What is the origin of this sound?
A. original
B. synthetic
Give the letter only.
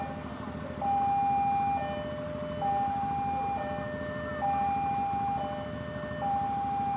A